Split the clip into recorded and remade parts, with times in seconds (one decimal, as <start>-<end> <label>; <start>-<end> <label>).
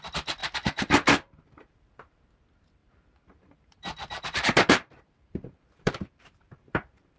0.0-0.4 recorded; 0.4-2.2 remade; 2.2-2.8 recorded; 2.8-7.2 remade